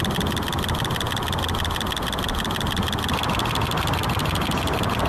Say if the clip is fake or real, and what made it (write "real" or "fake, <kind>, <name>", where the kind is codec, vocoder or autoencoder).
real